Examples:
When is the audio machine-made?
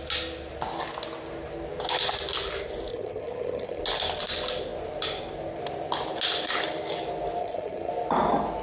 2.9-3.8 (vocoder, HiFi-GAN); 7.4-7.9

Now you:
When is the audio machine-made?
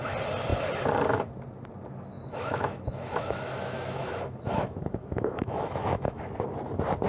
2.1-6.2 (autoencoder, DAC-VAE)